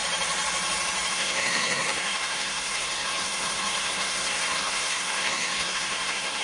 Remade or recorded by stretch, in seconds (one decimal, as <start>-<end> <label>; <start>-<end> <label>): 0.0-1.1 recorded; 1.1-6.4 remade